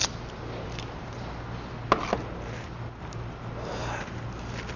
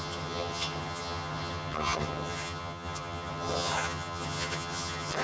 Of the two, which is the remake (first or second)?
second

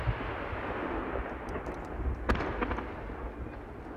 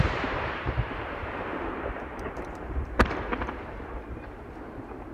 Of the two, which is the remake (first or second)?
second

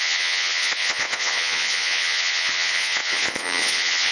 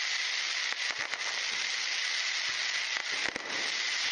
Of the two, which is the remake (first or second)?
first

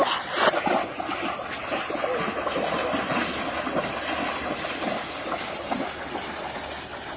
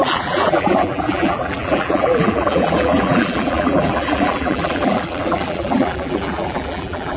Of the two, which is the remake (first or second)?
second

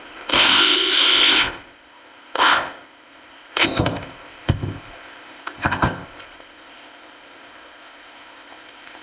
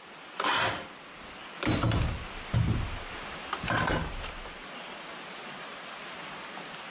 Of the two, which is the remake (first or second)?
first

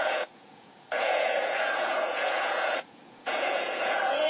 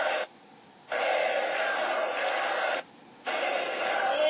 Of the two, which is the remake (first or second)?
first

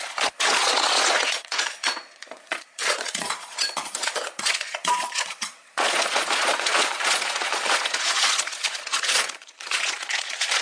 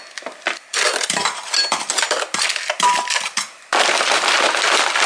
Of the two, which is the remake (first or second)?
first